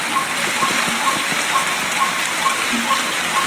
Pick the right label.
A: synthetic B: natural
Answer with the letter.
B